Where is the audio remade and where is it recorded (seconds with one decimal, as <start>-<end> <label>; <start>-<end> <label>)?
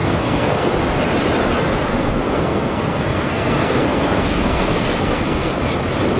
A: 0.0-0.7 remade; 0.7-1.9 recorded; 1.9-5.6 remade; 5.6-6.2 recorded